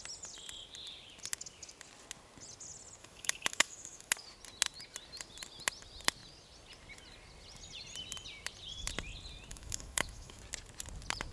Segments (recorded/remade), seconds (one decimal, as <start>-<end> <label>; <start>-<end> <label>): 0.0-3.0 recorded; 3.0-4.1 remade; 4.1-9.5 recorded; 9.5-10.4 remade; 10.4-11.3 recorded